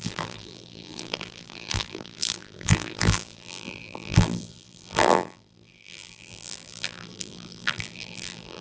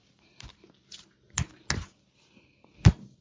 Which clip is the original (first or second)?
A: second